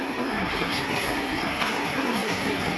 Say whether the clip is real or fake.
fake